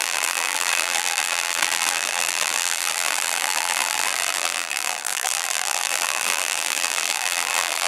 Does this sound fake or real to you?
fake